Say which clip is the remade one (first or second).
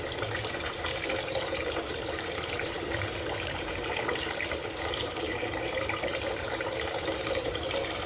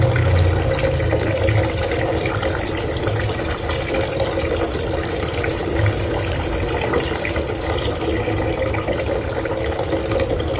first